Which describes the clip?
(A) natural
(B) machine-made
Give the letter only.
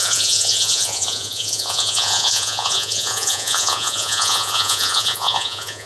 B